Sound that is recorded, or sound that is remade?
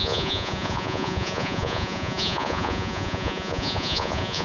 remade